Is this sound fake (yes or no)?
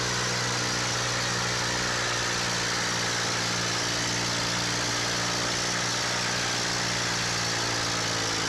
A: no